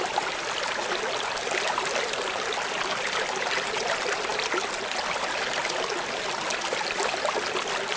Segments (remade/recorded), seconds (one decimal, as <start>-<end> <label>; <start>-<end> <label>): 0.0-8.0 recorded